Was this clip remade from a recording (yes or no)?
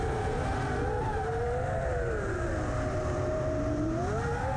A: no